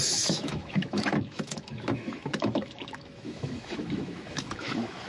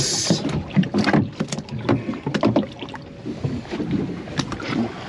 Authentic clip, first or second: second